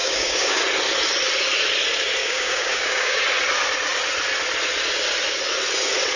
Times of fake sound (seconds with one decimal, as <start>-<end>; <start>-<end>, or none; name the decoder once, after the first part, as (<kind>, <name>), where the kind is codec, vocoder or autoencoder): 0.0-0.6 (codec, DAC); 2.2-3.2